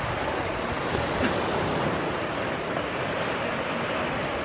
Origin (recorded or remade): recorded